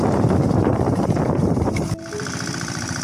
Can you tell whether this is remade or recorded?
remade